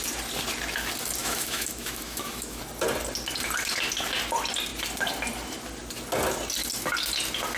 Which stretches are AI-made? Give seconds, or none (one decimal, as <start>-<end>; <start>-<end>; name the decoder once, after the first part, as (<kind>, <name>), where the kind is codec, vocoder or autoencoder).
1.2-2.6 (autoencoder, DAC-VAE)